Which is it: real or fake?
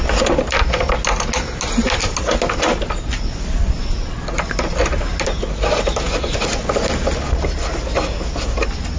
real